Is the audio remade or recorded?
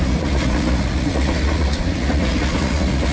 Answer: remade